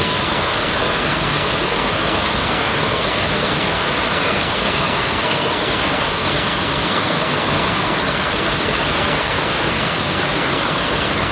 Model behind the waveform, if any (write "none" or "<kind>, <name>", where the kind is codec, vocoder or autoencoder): codec, SNAC